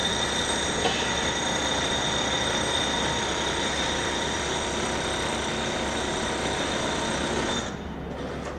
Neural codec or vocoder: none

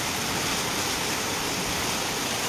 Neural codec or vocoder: none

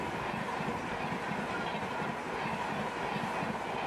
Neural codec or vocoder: none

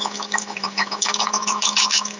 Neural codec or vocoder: autoencoder, DAC-VAE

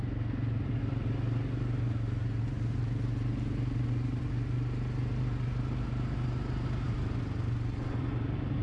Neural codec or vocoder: none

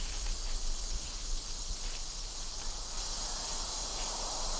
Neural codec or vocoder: none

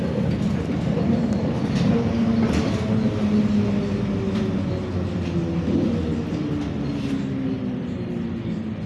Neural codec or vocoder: none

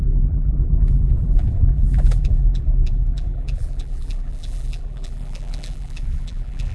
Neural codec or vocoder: vocoder, BigVGAN v2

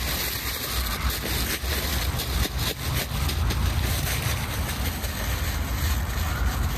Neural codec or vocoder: none